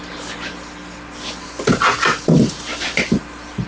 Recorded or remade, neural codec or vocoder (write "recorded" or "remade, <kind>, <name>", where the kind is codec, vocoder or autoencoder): recorded